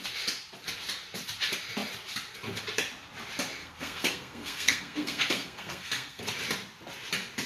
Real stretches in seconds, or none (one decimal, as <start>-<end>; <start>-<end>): 0.0-3.6; 6.2-7.5